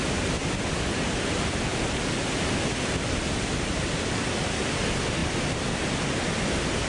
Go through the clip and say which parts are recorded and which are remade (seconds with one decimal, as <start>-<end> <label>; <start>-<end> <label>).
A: 0.0-6.9 recorded